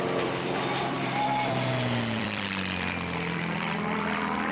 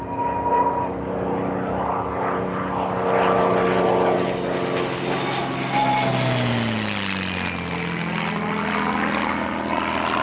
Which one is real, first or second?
second